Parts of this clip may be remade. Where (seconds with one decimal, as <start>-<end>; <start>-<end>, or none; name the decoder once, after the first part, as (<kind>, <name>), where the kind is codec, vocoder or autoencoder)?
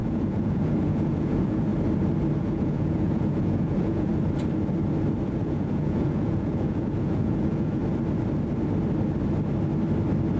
0.0-1.7 (vocoder, Vocos); 2.4-4.1; 5.4-7.8